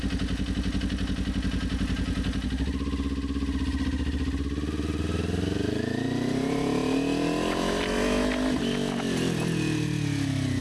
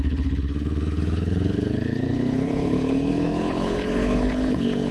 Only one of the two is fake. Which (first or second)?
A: second